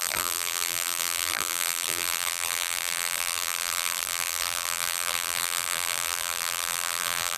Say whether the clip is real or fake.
fake